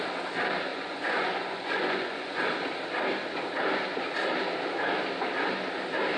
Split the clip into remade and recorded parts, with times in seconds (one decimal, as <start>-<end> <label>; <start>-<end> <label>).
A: 0.0-0.7 recorded; 0.7-2.4 remade; 2.4-6.2 recorded